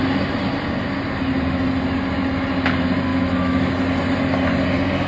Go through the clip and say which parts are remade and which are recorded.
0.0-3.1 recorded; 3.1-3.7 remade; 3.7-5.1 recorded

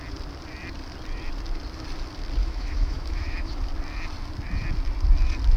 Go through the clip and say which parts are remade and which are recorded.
0.0-2.4 recorded; 2.4-3.6 remade; 3.6-5.6 recorded

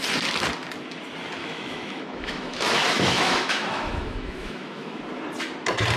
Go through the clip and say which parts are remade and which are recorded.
0.0-1.4 recorded; 1.4-5.0 remade; 5.0-6.0 recorded

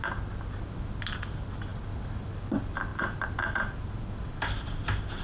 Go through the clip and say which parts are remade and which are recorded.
0.0-5.2 recorded